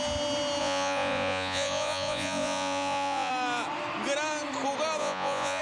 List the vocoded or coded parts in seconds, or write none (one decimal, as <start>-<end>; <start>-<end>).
0.6-3.3; 5.0-5.6